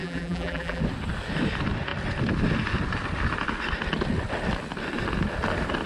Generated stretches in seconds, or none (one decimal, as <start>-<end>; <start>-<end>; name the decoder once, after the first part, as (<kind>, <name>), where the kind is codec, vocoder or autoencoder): 0.0-0.8 (vocoder, BigVGAN v2)